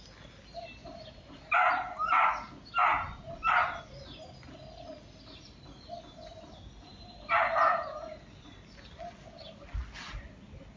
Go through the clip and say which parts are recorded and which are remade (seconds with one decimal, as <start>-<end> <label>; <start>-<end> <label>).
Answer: 0.0-10.8 recorded

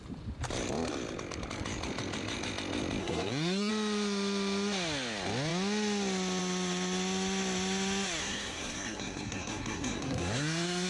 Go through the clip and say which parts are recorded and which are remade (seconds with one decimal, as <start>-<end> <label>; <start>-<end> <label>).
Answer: 0.0-3.0 recorded; 3.0-3.7 remade; 3.7-8.2 recorded; 8.2-10.9 remade